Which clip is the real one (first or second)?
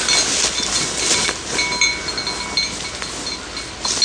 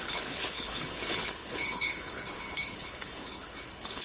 first